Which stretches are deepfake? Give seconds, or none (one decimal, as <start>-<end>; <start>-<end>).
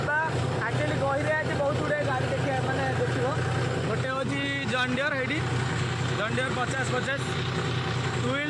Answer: none